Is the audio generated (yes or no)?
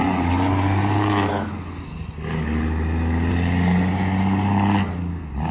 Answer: no